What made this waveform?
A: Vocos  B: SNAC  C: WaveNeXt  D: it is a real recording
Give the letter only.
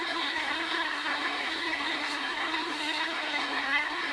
B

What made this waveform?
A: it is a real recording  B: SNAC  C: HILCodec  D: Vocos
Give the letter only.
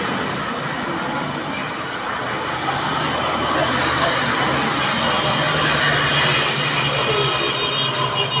A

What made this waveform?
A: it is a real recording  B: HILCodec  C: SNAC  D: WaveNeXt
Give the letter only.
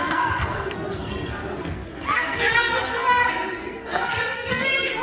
C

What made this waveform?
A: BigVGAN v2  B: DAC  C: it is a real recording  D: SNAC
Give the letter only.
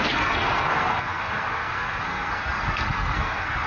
D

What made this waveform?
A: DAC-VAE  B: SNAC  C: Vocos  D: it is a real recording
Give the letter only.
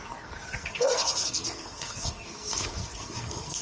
B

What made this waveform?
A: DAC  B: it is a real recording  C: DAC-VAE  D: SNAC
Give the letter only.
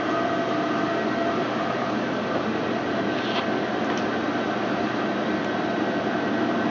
B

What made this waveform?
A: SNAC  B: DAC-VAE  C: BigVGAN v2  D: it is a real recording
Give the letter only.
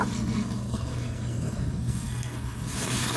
A